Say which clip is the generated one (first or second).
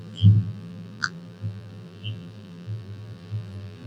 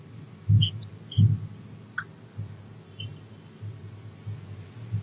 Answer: first